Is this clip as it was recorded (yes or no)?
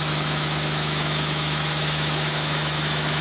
no